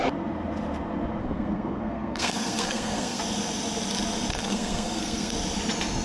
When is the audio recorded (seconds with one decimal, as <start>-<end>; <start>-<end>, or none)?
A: 0.0-1.2; 3.2-4.3; 5.3-6.0